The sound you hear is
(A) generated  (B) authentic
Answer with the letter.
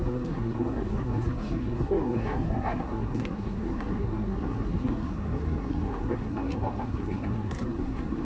A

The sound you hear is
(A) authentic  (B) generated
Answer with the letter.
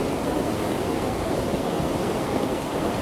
B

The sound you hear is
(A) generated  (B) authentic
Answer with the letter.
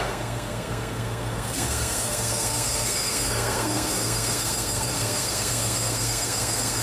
A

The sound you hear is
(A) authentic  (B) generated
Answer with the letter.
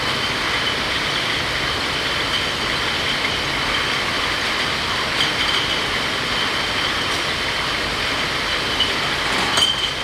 A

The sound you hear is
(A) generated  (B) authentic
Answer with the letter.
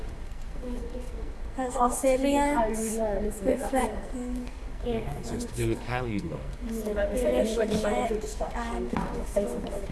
A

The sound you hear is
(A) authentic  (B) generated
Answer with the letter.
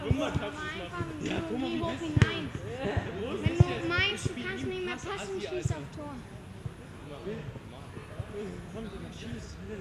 A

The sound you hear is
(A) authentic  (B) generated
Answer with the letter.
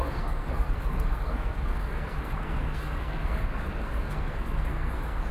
B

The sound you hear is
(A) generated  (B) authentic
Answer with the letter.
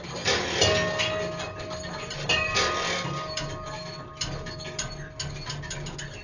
B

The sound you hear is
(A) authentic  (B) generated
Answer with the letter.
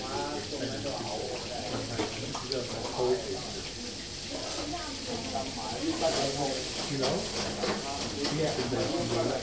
A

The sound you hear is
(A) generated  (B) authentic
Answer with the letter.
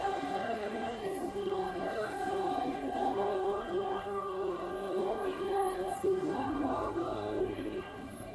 A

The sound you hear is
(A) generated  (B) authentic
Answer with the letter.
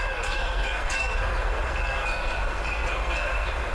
A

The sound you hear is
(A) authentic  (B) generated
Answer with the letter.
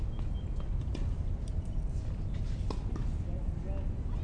A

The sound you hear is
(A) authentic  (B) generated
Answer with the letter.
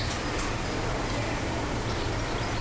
A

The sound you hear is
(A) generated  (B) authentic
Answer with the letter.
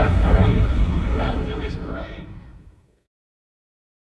A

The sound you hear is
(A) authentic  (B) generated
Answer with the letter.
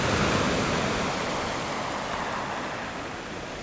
A